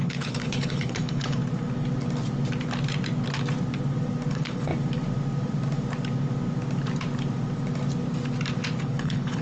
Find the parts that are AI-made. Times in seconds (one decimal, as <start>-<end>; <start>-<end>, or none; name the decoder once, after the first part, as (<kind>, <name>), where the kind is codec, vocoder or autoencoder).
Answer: 0.0-1.4 (codec, HILCodec); 4.3-4.7; 8.8-9.4

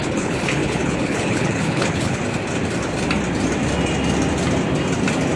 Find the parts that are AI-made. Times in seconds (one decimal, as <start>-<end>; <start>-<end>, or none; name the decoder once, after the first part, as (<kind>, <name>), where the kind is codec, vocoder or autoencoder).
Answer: 0.0-2.2 (codec, HILCodec)

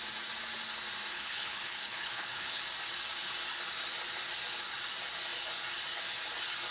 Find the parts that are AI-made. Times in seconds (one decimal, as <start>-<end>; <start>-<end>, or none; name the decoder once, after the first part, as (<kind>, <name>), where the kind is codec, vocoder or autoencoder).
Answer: 1.1-2.6 (codec, HILCodec)

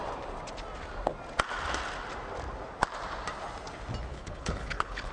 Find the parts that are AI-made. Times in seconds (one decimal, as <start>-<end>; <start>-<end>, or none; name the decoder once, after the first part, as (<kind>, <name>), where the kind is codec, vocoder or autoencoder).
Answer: 4.1-5.1 (codec, HILCodec)

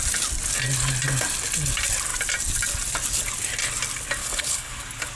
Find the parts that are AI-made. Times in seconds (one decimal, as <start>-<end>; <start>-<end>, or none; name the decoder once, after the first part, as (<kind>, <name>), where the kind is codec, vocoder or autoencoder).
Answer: 4.2-4.7 (codec, HILCodec)

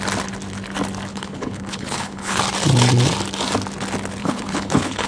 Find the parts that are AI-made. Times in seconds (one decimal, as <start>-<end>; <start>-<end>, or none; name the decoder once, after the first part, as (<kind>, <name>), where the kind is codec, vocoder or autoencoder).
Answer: 1.1-2.4 (codec, HILCodec); 4.2-5.1

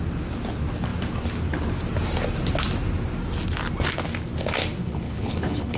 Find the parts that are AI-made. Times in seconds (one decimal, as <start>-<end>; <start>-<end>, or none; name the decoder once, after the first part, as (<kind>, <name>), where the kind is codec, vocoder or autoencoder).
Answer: 4.8-5.8 (codec, HILCodec)